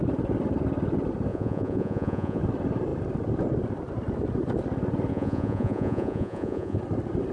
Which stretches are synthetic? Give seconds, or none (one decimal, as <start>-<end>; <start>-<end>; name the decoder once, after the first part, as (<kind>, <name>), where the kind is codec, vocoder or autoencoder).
1.3-2.4 (vocoder, Vocos); 5.1-6.8

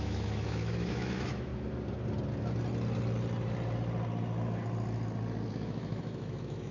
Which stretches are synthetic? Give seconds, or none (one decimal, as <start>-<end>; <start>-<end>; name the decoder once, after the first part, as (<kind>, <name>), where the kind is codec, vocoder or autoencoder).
0.0-1.5 (autoencoder, DAC-VAE); 5.5-6.7

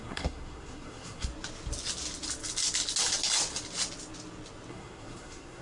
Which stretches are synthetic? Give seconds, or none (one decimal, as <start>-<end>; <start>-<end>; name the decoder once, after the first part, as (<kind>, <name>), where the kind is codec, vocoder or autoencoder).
0.0-1.3 (codec, SNAC); 4.7-5.6

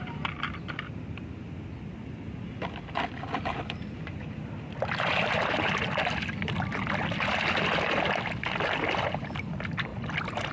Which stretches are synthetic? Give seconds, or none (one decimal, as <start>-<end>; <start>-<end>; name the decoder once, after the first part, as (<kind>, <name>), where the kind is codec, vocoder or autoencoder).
none

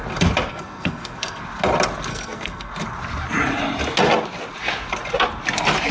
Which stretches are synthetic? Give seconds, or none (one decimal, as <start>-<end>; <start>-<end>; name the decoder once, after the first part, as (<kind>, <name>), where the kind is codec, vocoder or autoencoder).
0.5-1.4 (codec, SNAC); 2.1-2.7

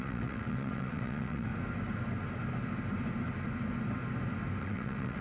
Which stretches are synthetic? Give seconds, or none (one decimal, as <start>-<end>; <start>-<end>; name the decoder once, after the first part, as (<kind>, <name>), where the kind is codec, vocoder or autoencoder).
0.0-1.5 (vocoder, WaveNeXt); 4.6-5.2